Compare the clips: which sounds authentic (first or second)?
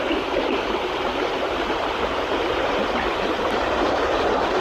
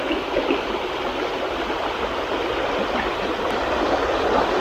second